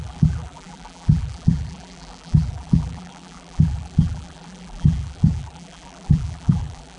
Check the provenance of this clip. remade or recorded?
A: remade